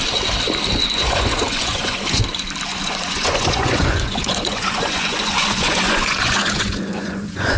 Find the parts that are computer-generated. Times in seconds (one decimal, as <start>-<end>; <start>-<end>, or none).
0.8-2.2; 2.7-7.6